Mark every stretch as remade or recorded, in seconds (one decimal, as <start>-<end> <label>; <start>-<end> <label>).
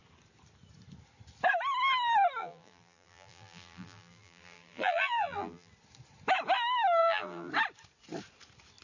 0.0-2.4 recorded; 2.4-5.7 remade; 5.7-7.0 recorded; 7.0-7.5 remade; 7.5-8.8 recorded